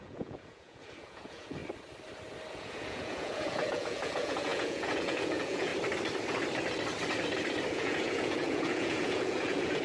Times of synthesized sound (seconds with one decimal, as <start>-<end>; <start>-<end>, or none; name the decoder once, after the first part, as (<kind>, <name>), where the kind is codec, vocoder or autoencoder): 0.0-1.6 (vocoder, Vocos); 2.5-5.7; 7.7-9.8